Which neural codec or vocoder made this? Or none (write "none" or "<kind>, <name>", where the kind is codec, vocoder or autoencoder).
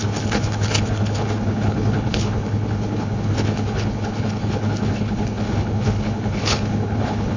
codec, HILCodec